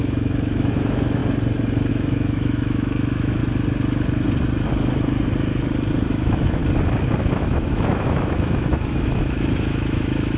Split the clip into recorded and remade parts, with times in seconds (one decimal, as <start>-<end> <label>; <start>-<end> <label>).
0.0-1.2 remade; 1.2-1.9 recorded; 1.9-3.4 remade; 3.4-6.1 recorded; 6.1-6.6 remade; 6.6-7.2 recorded; 7.2-10.4 remade

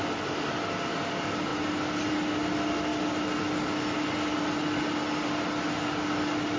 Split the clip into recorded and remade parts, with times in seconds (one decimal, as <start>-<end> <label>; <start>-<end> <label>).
0.0-6.6 recorded

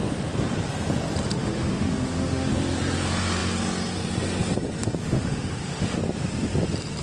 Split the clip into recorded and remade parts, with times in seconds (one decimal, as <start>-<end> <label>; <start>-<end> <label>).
0.0-1.4 recorded; 1.4-2.5 remade; 2.5-5.0 recorded; 5.0-6.0 remade; 6.0-7.0 recorded

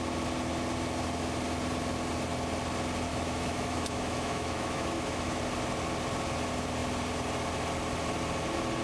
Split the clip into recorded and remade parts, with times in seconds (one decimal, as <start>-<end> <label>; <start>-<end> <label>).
0.0-3.1 recorded; 3.1-5.4 remade; 5.4-8.8 recorded

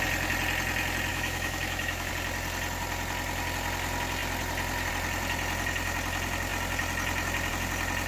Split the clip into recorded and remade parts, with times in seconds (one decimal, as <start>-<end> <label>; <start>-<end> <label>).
0.0-1.1 recorded; 1.1-2.1 remade; 2.1-8.1 recorded

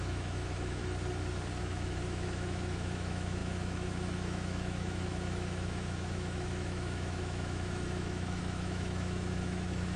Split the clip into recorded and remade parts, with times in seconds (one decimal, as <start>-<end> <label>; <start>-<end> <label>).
0.0-0.8 remade; 0.8-1.6 recorded; 1.6-10.0 remade

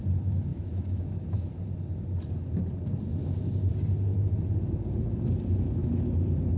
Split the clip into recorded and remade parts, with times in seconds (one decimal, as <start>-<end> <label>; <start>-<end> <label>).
0.0-0.5 recorded; 0.5-1.5 remade; 1.5-6.6 recorded

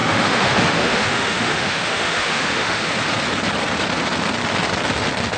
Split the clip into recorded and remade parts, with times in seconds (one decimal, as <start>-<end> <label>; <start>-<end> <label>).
0.0-2.9 remade; 2.9-5.4 recorded